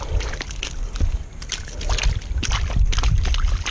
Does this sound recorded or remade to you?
recorded